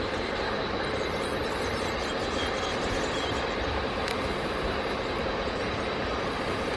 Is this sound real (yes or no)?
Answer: no